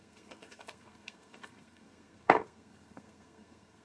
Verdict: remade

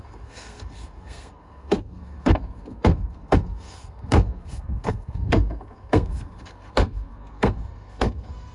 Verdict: remade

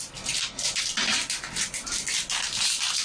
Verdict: recorded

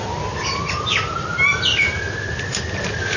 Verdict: recorded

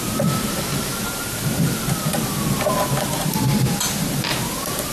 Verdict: recorded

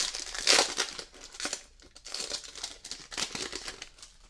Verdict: recorded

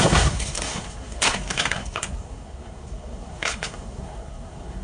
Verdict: remade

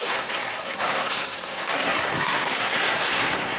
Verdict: remade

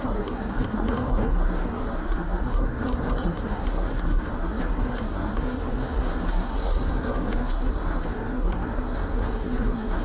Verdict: remade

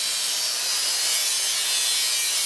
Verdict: recorded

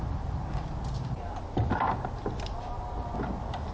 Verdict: recorded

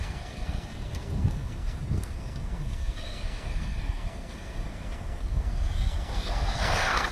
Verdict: remade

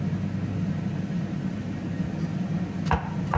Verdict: recorded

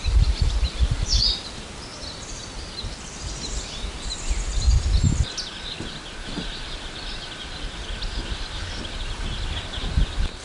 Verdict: recorded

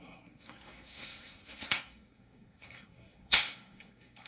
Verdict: remade